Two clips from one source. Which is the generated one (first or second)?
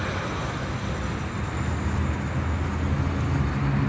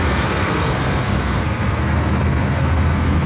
second